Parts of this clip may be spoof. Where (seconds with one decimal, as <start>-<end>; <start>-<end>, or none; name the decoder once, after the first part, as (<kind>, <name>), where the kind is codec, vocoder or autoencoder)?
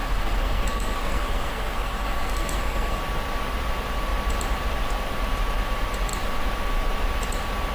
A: 0.0-3.0 (codec, SNAC)